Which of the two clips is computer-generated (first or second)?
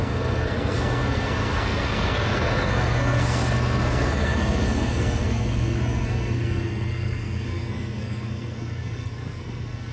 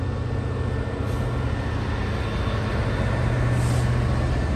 first